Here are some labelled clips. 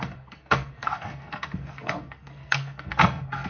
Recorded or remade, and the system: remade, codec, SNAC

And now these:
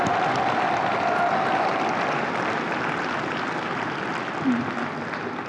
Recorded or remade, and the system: recorded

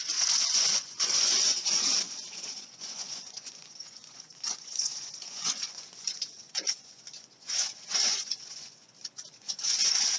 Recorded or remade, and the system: remade, vocoder, Vocos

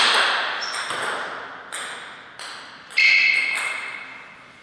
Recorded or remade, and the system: recorded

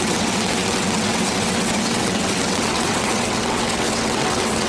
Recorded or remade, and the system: remade, vocoder, WaveNeXt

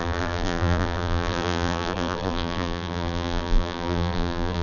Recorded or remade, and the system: remade, vocoder, BigVGAN v2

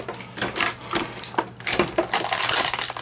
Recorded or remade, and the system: recorded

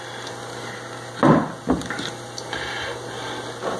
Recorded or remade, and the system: recorded